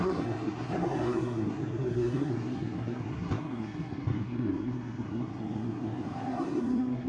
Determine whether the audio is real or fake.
fake